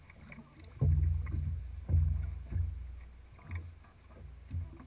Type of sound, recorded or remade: recorded